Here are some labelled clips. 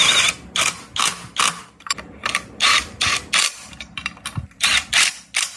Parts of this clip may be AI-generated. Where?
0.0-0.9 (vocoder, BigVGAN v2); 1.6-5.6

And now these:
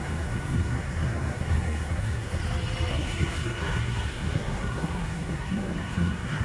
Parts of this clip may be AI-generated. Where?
0.0-2.4 (codec, SNAC); 2.9-6.4